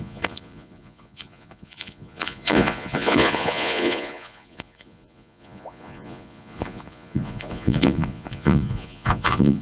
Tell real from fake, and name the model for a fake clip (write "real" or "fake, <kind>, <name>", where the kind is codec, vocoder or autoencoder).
fake, vocoder, Vocos